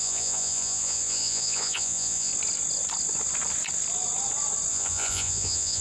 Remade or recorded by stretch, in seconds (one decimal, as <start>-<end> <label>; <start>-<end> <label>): 0.0-2.3 remade; 2.3-4.7 recorded; 4.7-5.8 remade